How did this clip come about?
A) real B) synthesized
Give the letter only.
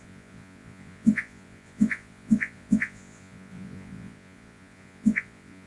B